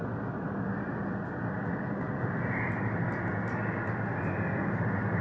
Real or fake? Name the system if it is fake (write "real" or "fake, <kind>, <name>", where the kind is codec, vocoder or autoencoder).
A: real